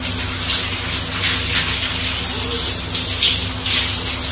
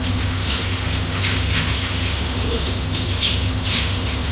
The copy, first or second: second